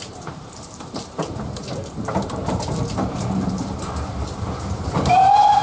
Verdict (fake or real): fake